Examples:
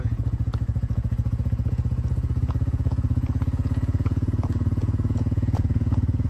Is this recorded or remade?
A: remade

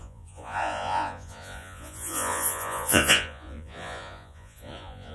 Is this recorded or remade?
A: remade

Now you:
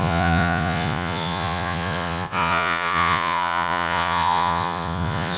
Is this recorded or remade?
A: remade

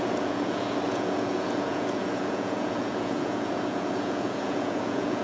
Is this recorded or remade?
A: remade